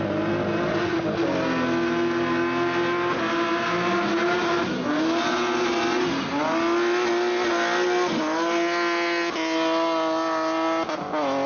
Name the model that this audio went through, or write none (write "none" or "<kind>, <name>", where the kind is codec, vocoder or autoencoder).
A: none